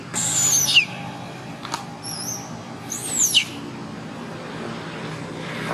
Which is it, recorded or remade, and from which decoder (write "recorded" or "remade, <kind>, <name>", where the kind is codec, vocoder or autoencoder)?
recorded